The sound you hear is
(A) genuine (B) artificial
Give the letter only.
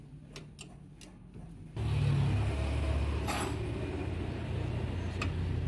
A